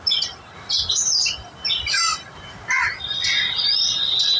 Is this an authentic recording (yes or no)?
yes